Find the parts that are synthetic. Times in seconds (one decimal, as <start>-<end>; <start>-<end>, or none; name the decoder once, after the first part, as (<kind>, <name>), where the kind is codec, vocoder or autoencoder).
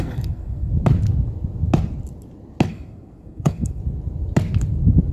0.0-0.7 (codec, SNAC); 2.7-3.8